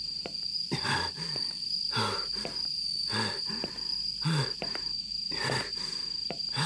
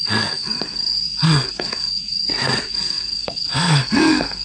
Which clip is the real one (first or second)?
first